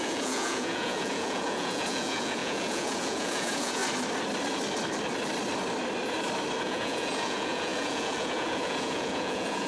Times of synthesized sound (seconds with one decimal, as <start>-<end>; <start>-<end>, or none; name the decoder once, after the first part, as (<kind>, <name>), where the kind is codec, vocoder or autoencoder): 0.0-3.8 (vocoder, Vocos); 6.6-9.7